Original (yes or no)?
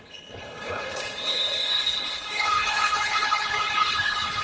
no